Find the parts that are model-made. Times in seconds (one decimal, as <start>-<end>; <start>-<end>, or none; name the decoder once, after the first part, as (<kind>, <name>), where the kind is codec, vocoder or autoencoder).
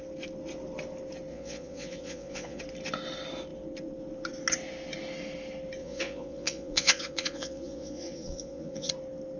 1.3-2.6 (vocoder, Vocos); 5.8-8.9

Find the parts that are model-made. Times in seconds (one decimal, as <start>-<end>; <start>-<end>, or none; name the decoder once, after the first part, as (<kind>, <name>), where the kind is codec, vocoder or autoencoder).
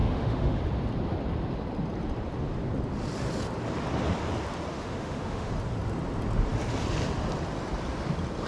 0.0-0.6 (autoencoder, DAC-VAE); 4.7-5.5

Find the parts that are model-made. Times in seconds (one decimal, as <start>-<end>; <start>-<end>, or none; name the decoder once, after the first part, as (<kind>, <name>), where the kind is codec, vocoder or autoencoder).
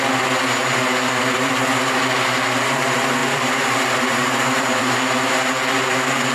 0.6-1.5 (vocoder, BigVGAN v2); 3.2-5.3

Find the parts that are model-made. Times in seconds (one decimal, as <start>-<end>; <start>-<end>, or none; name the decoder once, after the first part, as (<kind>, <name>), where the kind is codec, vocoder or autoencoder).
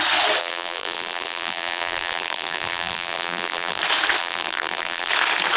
0.4-3.8 (vocoder, BigVGAN v2); 4.2-5.1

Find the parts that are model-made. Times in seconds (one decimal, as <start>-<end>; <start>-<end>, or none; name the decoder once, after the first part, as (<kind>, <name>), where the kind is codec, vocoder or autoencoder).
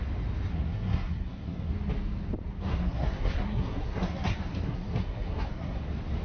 0.5-1.7 (codec, SNAC); 2.7-5.8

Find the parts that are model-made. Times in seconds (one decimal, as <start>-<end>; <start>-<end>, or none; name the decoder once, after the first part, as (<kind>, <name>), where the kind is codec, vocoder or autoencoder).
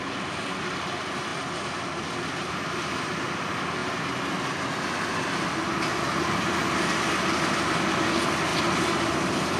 none